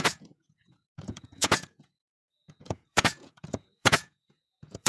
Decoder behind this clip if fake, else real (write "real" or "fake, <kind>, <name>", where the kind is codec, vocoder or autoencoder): fake, vocoder, Vocos